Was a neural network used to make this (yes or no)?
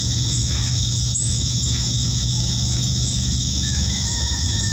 yes